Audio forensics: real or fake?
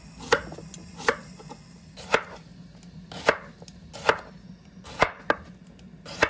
real